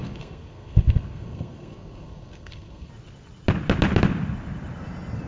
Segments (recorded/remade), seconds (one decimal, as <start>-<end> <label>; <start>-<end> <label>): 0.0-2.9 remade; 2.9-5.3 recorded

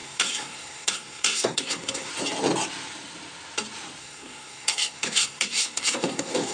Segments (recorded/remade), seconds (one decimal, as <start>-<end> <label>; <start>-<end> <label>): 0.0-2.1 remade; 2.1-4.0 recorded; 4.0-6.5 remade

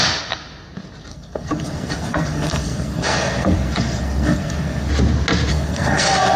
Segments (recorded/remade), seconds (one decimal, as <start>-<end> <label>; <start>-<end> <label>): 0.0-1.1 recorded; 1.1-4.9 remade; 4.9-5.5 recorded; 5.5-6.4 remade

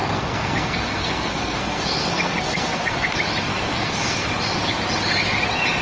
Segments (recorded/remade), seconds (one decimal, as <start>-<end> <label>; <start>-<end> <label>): 0.0-3.1 remade; 3.1-3.5 recorded; 3.5-4.3 remade; 4.3-5.8 recorded

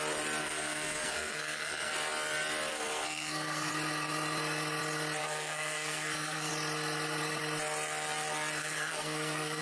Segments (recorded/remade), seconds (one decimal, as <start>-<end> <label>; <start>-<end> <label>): 0.0-0.4 recorded; 0.4-1.9 remade; 1.9-2.7 recorded; 2.7-3.7 remade; 3.7-5.2 recorded; 5.2-6.5 remade; 6.5-8.6 recorded; 8.6-9.6 remade

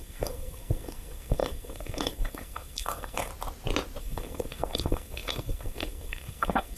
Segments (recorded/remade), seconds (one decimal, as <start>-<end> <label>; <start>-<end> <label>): 0.0-3.3 remade; 3.3-4.0 recorded; 4.0-6.8 remade